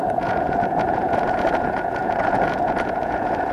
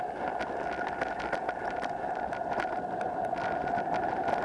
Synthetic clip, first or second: first